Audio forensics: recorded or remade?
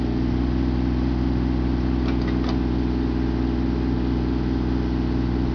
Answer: recorded